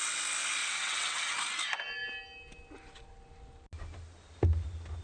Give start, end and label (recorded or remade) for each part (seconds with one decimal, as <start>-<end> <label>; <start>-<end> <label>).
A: 0.0-0.6 recorded; 0.6-1.3 remade; 1.3-5.0 recorded